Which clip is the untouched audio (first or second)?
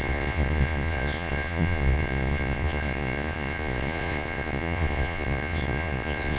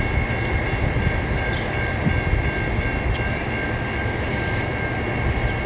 second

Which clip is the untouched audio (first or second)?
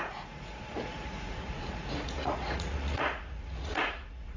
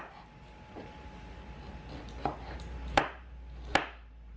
second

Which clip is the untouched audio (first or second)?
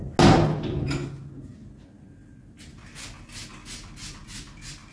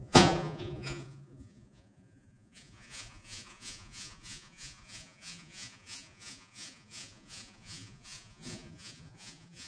first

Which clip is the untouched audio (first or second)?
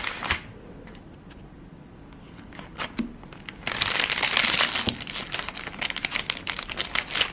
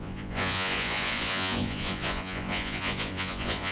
first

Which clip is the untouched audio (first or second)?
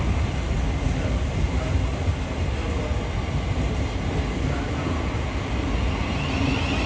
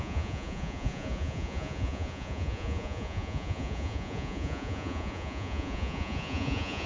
first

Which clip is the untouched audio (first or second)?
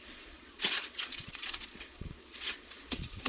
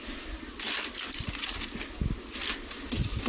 second